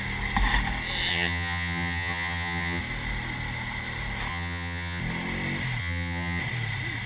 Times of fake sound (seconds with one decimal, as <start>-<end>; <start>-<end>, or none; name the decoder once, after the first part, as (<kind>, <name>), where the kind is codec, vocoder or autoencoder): 1.1-2.8 (vocoder, HiFi-GAN); 4.3-5.0; 5.8-6.4